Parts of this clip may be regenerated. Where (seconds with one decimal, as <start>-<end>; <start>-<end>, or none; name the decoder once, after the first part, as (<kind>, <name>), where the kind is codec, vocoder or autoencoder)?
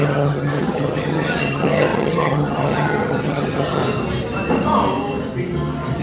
0.0-3.8 (vocoder, HiFi-GAN)